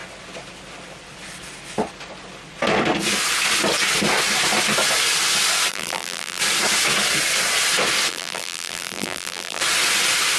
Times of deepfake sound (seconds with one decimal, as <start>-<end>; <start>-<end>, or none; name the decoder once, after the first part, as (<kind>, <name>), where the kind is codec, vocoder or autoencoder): 5.7-6.4 (vocoder, BigVGAN v2); 8.1-9.6